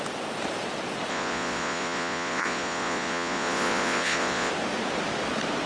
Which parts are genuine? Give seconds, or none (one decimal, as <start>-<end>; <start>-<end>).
0.0-1.1; 4.5-5.7